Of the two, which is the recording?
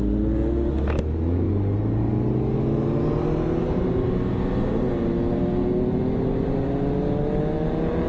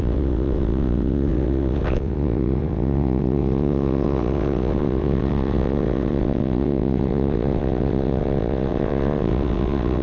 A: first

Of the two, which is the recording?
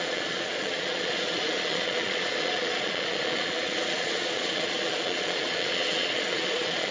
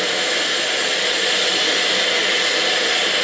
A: second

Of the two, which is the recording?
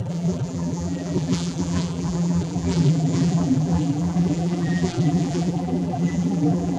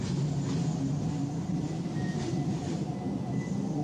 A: second